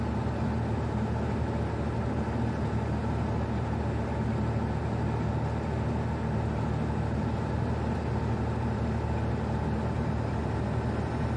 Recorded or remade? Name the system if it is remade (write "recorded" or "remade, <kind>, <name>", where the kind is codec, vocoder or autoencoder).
recorded